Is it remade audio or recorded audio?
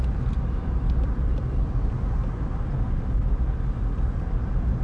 recorded